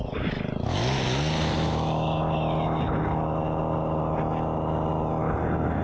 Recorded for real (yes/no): yes